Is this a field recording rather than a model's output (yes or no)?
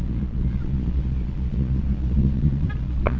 no